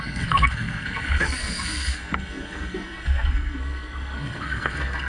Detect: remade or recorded remade